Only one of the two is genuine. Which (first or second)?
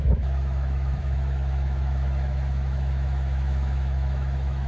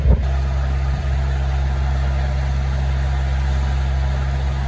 second